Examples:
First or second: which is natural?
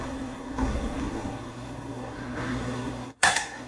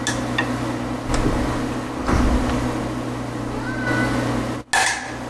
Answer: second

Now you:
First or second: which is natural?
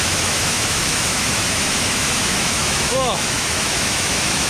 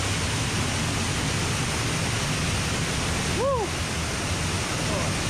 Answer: second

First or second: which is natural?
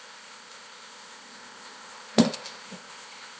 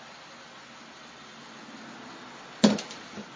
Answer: second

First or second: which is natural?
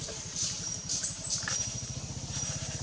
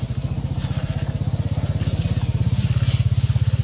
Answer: second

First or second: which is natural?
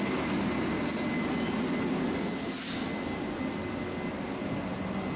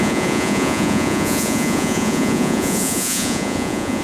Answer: first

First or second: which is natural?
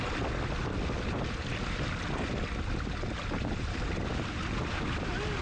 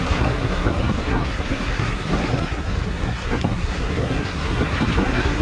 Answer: first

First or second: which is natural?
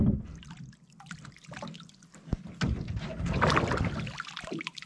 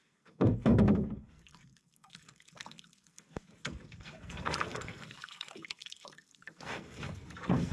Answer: first